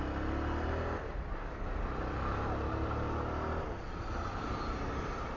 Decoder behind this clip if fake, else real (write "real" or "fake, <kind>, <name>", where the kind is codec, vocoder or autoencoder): real